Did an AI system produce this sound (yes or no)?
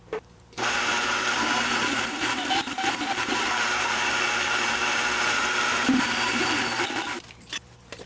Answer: yes